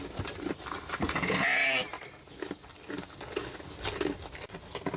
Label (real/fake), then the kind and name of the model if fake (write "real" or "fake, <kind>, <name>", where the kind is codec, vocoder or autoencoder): real